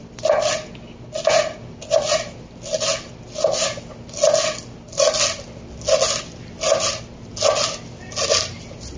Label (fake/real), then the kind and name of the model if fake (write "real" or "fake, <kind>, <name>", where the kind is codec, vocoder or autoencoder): real